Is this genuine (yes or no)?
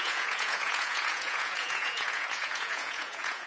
no